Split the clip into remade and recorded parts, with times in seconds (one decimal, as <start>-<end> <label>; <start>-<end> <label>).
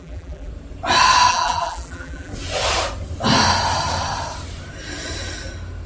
0.0-0.5 remade; 0.5-1.3 recorded; 1.3-2.3 remade; 2.3-5.9 recorded